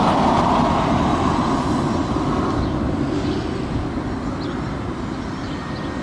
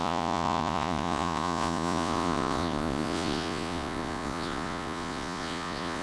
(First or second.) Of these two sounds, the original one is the first